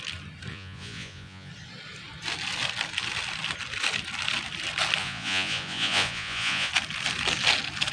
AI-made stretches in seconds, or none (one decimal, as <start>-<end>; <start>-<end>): 0.5-1.5; 5.0-6.7